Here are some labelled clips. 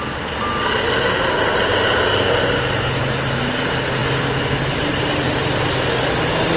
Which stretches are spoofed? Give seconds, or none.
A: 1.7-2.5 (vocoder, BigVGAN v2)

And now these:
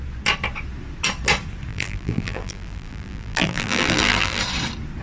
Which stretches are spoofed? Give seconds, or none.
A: 1.7-4.4 (vocoder, BigVGAN v2)

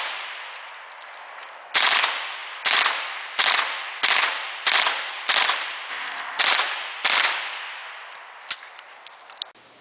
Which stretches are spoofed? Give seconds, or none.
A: 5.9-6.4 (codec, ZipCodec)

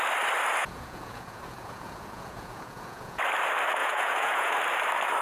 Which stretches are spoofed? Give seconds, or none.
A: 0.6-3.2 (vocoder, Vocos); 3.8-4.5

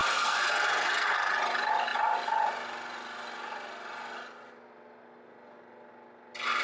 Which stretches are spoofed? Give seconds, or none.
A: 0.0-1.3 (codec, SNAC)

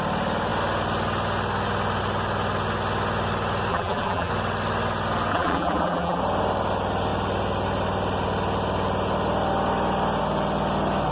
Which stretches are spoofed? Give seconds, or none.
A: 3.7-4.3 (vocoder, BigVGAN v2); 5.3-6.2